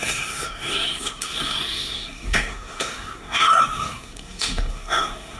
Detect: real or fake fake